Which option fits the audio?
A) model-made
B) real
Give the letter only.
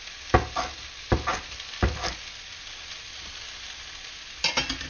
B